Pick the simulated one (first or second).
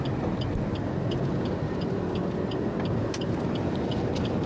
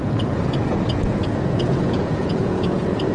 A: second